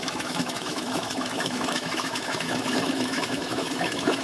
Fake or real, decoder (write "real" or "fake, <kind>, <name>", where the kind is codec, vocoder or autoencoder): fake, autoencoder, DAC-VAE